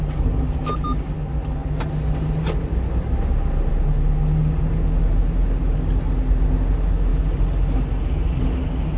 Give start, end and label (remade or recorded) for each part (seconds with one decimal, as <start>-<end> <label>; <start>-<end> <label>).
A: 0.0-9.0 recorded